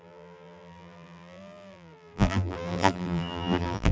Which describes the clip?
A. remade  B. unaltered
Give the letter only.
A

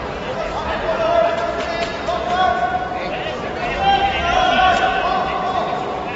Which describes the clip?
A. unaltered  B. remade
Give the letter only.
A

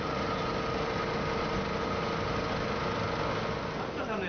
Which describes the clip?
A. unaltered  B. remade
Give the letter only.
A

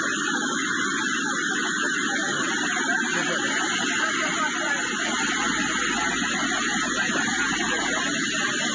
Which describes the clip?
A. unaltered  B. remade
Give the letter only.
A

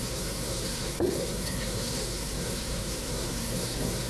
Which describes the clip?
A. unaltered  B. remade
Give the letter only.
B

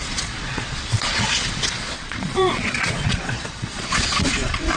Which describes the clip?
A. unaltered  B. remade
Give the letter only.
B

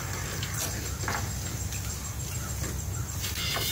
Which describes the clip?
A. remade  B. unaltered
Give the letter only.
B